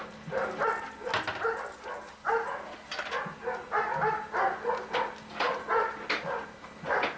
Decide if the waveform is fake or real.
real